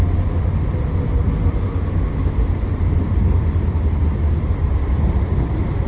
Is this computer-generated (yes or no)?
no